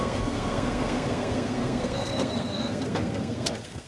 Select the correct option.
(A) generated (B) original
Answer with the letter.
A